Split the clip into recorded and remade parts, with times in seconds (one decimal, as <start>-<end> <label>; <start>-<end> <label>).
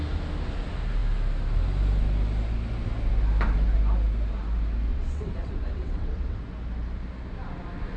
0.0-4.9 recorded; 4.9-6.4 remade; 6.4-8.0 recorded